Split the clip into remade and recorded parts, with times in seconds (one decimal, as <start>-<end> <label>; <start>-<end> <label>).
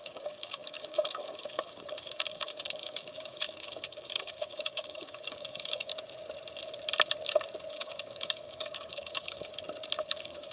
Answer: 0.0-5.9 remade; 5.9-7.7 recorded; 7.7-9.5 remade; 9.5-10.0 recorded; 10.0-10.5 remade